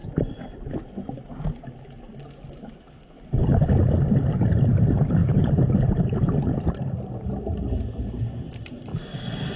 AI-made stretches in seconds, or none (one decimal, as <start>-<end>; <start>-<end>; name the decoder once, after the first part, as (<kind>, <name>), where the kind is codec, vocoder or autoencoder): none